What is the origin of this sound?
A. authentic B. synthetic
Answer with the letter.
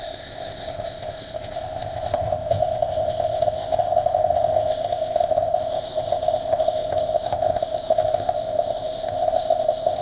B